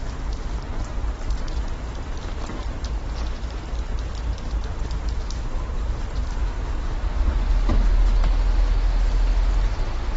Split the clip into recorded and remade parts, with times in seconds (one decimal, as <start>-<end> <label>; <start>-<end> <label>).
0.0-10.2 recorded